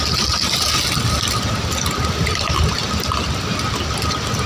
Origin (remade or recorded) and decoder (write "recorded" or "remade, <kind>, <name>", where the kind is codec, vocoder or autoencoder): recorded